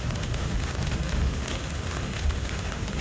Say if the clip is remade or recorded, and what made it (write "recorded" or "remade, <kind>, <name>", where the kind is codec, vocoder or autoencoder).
remade, autoencoder, DAC-VAE